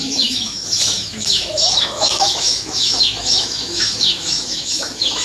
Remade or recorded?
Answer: remade